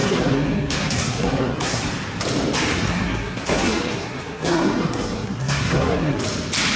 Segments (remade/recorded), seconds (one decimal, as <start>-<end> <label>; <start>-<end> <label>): 0.0-1.9 remade; 1.9-2.7 recorded; 2.7-6.2 remade; 6.2-6.8 recorded